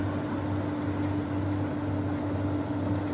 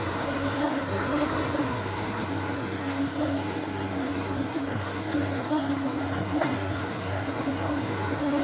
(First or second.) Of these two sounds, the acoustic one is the first